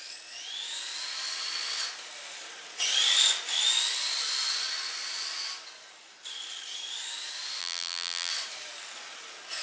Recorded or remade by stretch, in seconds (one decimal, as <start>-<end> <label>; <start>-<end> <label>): 0.0-7.6 recorded; 7.6-8.3 remade; 8.3-9.6 recorded